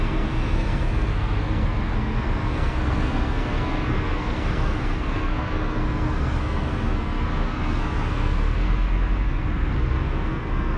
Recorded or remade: remade